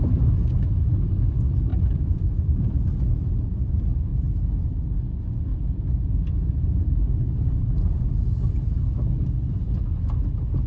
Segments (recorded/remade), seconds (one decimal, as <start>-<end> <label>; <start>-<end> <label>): 0.0-1.7 recorded; 1.7-2.7 remade; 2.7-5.5 recorded; 5.5-8.1 remade; 8.1-10.7 recorded